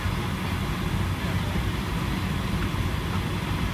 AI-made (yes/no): no